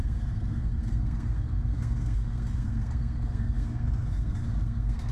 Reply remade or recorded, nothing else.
remade